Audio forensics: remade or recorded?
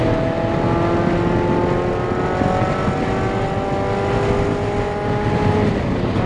recorded